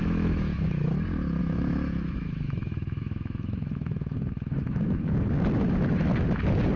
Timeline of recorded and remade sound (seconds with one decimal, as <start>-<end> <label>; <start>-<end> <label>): 0.0-0.9 remade; 0.9-1.4 recorded; 1.4-5.1 remade; 5.1-6.8 recorded